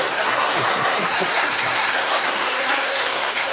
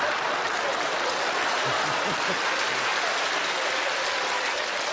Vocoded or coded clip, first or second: first